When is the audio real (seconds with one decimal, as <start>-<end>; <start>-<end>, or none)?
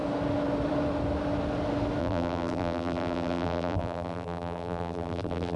0.0-2.0